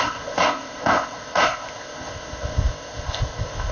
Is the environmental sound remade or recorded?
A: remade